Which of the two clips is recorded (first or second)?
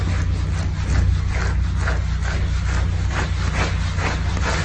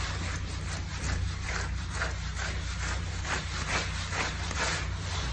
first